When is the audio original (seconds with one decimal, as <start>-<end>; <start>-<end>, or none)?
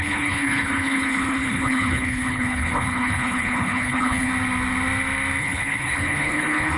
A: 4.3-5.4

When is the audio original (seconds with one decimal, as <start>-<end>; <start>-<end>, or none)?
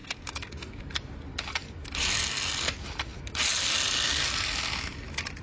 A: 0.8-5.4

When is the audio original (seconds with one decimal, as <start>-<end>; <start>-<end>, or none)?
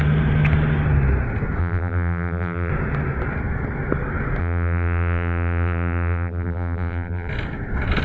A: 0.0-1.6; 2.7-4.4; 7.3-8.0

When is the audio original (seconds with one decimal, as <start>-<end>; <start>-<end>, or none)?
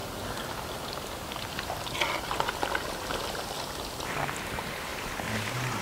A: 3.5-4.9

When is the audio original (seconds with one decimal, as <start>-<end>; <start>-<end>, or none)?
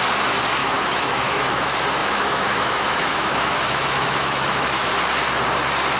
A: 0.0-0.6; 1.6-2.0; 4.9-6.0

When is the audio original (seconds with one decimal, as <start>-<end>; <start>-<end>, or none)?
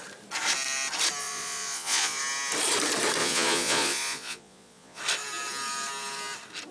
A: 0.0-1.2; 2.2-3.2; 5.0-6.7